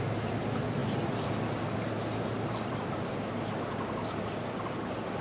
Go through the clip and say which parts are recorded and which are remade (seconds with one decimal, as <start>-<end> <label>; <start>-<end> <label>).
0.0-5.2 recorded